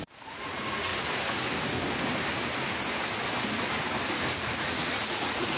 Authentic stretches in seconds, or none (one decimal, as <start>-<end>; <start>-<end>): 0.9-4.3